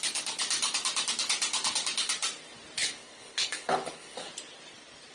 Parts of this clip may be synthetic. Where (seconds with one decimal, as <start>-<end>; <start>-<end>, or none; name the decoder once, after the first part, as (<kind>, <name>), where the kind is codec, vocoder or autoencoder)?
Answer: 2.8-4.3 (codec, HILCodec)

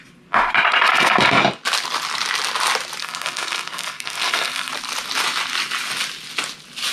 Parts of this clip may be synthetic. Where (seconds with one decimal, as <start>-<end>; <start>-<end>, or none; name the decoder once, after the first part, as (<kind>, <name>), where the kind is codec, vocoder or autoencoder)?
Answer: 0.9-1.4 (codec, SNAC); 3.0-4.7

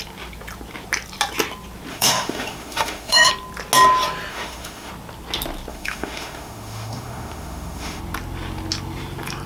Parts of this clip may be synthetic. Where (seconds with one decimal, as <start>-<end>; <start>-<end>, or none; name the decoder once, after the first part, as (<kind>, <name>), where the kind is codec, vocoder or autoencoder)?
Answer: 1.9-3.3 (autoencoder, DAC-VAE); 4.3-4.9; 5.7-8.0

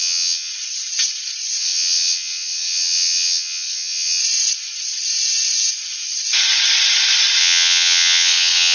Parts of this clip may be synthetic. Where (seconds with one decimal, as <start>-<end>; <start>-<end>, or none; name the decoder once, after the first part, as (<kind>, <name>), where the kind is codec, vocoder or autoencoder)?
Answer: 0.0-0.5 (vocoder, WaveNeXt); 1.6-4.2; 7.4-8.7

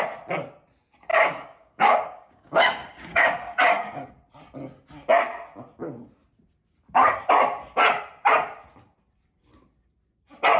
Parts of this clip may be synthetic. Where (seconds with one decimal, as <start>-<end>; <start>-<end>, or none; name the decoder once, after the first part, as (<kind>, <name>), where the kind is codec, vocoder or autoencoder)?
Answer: 1.1-4.1 (codec, DAC)

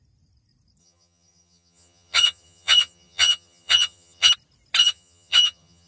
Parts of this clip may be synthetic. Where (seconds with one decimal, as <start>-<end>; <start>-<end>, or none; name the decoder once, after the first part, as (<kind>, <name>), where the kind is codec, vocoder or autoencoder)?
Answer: 0.8-4.3 (vocoder, HiFi-GAN); 4.8-5.9